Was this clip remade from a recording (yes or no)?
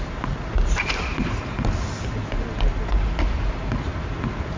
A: no